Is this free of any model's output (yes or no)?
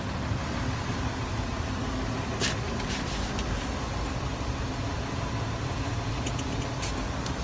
yes